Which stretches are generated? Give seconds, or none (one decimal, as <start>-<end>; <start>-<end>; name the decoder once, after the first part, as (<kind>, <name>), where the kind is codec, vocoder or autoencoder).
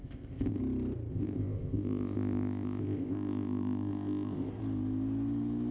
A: 0.0-0.6 (codec, ZipCodec); 1.1-4.5